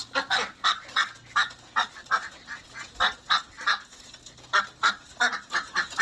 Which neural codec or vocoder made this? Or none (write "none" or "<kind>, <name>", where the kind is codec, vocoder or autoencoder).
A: none